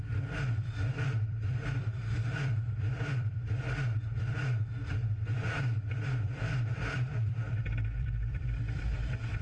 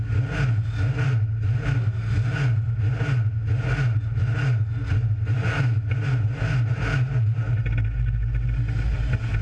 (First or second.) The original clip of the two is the second